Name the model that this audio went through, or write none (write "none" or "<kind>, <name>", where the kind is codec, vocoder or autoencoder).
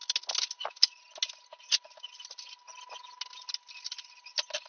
none